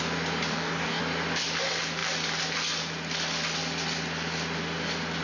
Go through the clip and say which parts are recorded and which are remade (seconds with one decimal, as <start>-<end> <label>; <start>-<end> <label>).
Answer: 0.0-0.5 recorded; 0.5-1.0 remade; 1.0-5.2 recorded